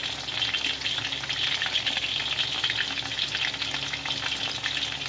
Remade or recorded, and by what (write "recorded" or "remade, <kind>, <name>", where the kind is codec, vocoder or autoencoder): recorded